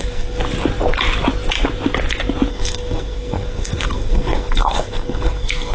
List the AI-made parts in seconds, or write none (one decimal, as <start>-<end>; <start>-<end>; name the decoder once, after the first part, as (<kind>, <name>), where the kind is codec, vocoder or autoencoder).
0.0-0.4 (codec, SNAC); 2.5-5.7